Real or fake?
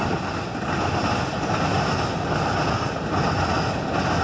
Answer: real